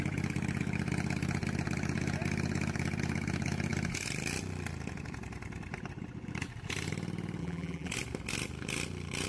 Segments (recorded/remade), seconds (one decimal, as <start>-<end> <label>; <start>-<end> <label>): 0.0-7.4 recorded; 7.4-7.9 remade; 7.9-9.3 recorded